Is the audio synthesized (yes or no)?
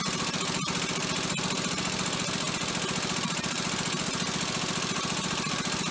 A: no